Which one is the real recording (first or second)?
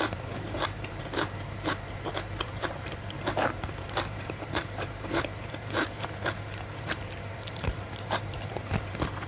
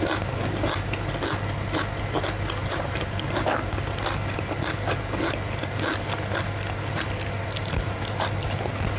second